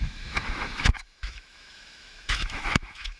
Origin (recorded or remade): remade